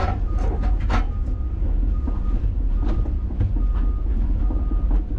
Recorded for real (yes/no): yes